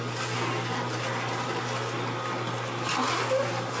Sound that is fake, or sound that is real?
real